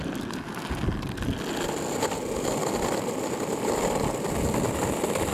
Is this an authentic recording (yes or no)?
yes